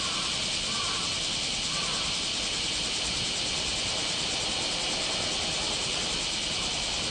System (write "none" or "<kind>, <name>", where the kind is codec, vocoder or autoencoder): none